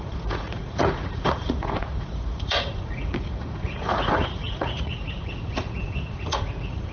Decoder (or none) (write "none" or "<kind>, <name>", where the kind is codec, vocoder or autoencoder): vocoder, Vocos